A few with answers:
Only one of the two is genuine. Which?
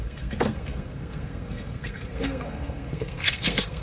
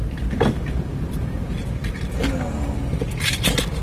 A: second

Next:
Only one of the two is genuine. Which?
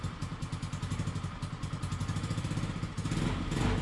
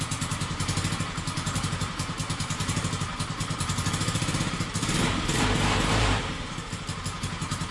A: first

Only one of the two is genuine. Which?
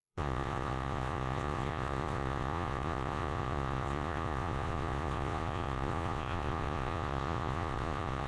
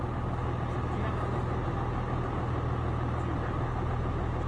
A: second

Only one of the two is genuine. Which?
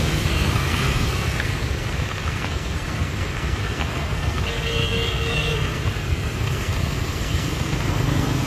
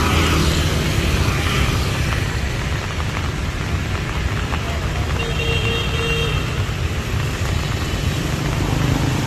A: second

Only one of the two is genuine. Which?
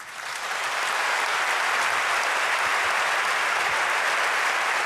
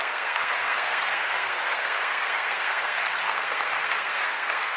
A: first